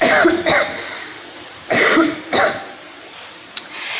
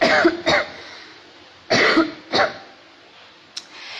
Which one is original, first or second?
second